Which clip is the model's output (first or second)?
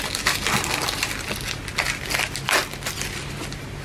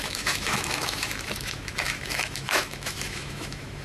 second